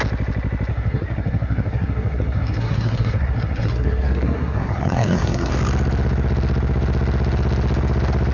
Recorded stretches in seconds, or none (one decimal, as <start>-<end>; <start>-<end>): 0.0-0.7; 5.5-8.3